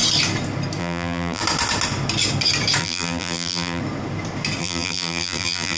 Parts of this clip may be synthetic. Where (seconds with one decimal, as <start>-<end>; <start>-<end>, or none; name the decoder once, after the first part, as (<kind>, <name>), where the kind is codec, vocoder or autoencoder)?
0.8-1.4 (vocoder, BigVGAN v2); 2.8-3.8; 4.6-5.8